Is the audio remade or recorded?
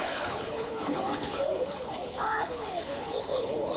remade